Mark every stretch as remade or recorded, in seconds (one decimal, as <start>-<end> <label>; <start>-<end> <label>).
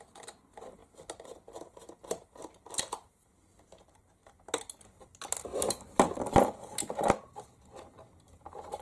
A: 0.0-8.8 recorded